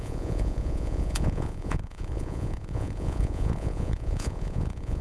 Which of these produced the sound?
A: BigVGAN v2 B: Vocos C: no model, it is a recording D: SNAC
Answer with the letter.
B